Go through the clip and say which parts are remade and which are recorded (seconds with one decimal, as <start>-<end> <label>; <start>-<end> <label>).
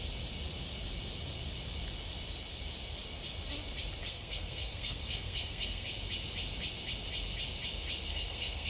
0.0-4.0 recorded; 4.0-5.9 remade; 5.9-8.1 recorded; 8.1-8.7 remade